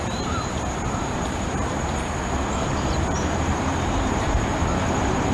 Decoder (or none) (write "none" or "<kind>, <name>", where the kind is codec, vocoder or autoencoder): vocoder, BigVGAN v2